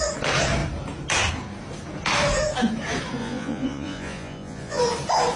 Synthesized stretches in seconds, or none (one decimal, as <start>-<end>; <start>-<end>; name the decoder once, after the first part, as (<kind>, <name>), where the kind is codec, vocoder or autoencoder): 3.2-4.8 (vocoder, Vocos)

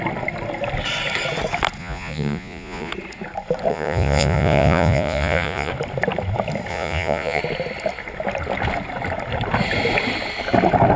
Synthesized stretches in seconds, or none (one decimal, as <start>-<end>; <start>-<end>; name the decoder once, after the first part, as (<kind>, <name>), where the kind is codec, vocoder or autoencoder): 1.8-2.9 (vocoder, Vocos); 3.7-5.7; 6.7-7.4